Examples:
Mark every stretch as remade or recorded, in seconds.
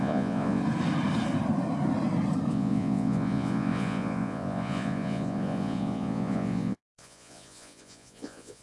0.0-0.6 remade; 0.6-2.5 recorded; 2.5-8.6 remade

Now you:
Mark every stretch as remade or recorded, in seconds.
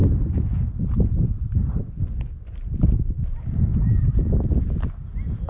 0.0-1.9 remade; 1.9-3.7 recorded; 3.7-4.3 remade; 4.3-5.5 recorded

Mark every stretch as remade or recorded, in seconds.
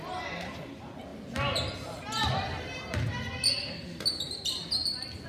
0.0-5.3 recorded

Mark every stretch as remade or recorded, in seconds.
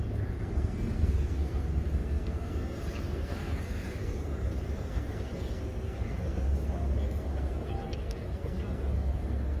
0.0-9.6 remade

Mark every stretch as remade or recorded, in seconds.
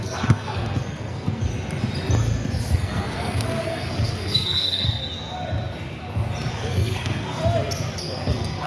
0.0-1.5 remade; 1.5-2.7 recorded; 2.7-5.0 remade; 5.0-6.5 recorded; 6.5-7.4 remade; 7.4-8.0 recorded; 8.0-8.7 remade